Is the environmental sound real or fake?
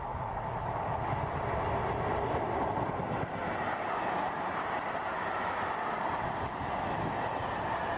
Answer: real